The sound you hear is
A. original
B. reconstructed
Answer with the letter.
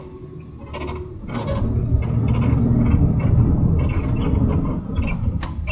A